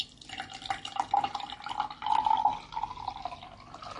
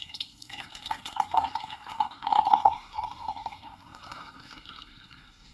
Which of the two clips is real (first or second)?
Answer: first